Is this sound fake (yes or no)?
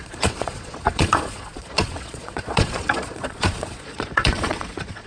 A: yes